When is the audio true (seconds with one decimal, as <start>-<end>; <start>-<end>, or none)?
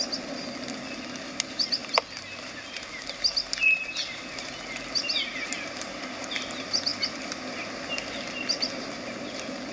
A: 0.0-9.7